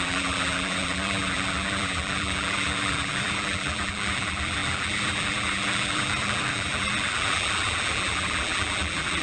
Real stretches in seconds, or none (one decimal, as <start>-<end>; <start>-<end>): none